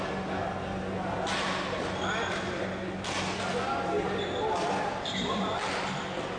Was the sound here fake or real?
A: real